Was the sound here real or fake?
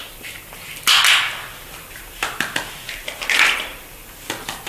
real